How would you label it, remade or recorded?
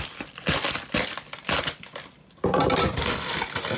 recorded